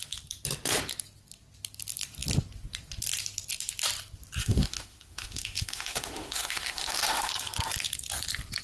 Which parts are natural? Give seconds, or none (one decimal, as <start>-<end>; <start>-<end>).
0.0-4.4; 7.3-8.6